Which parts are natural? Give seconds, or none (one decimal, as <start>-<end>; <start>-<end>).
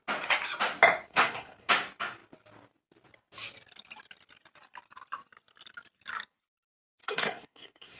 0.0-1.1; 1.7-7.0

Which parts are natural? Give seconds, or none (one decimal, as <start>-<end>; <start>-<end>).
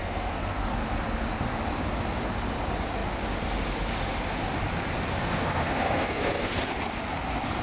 0.6-5.2; 6.6-7.6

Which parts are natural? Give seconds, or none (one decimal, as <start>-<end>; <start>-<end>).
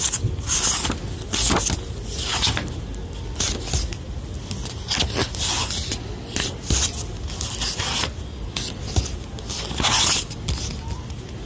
0.0-11.5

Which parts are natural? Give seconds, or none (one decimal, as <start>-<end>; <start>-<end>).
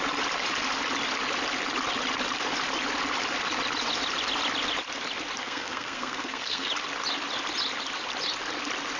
0.0-5.4; 6.7-9.0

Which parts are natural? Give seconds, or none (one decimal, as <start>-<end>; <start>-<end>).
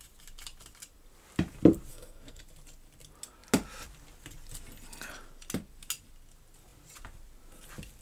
0.0-1.9; 2.4-8.0